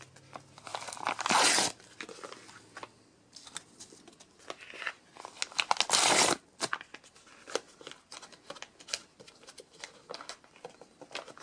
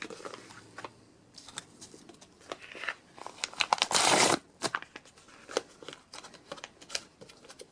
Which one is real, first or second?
first